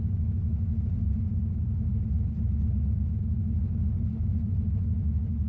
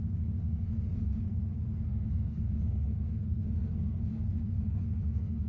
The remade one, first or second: second